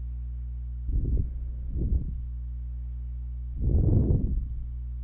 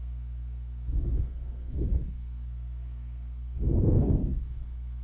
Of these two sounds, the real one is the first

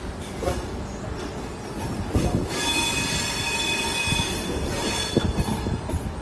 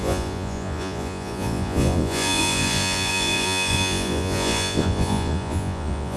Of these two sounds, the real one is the first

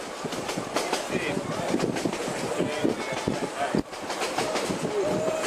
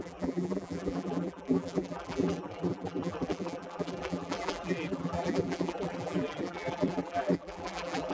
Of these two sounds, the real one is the first